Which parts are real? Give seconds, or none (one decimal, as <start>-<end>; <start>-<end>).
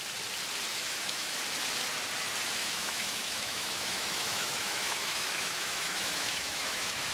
0.0-0.7; 1.4-2.6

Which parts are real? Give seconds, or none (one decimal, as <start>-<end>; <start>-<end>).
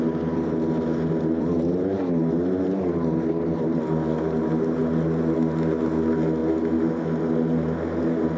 0.0-8.4